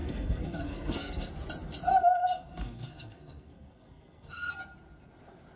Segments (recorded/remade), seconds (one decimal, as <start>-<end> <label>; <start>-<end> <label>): 0.0-1.3 remade; 1.3-1.9 recorded; 1.9-4.5 remade; 4.5-5.6 recorded